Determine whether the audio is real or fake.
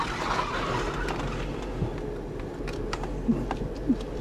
real